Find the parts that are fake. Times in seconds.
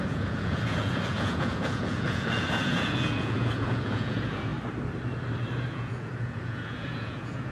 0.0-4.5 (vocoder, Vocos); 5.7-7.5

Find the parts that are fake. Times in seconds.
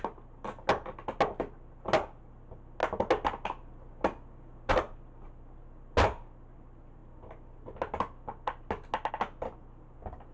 none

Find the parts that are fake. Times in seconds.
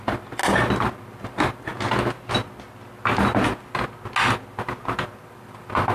0.0-0.4 (vocoder, BigVGAN v2); 1.0-1.7; 5.2-5.9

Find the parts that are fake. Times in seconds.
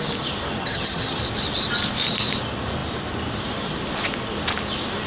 0.5-1.2 (vocoder, HiFi-GAN)